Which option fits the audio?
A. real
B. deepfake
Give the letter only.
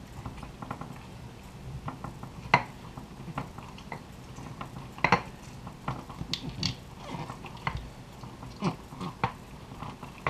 A